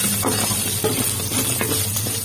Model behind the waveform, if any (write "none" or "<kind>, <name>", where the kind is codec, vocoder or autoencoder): none